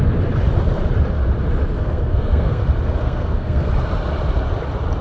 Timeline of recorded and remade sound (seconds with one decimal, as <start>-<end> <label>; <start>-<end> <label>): 0.0-1.7 recorded; 1.7-2.6 remade; 2.6-3.0 recorded; 3.0-3.7 remade; 3.7-5.0 recorded